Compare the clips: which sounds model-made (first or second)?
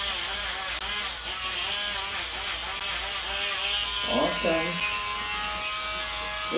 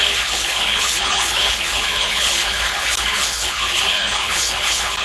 second